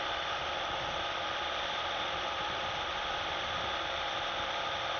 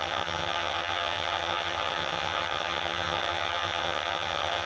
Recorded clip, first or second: first